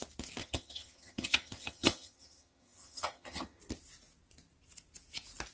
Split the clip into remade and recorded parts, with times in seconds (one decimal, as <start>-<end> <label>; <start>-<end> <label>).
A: 0.0-0.4 recorded; 0.4-3.6 remade; 3.6-5.5 recorded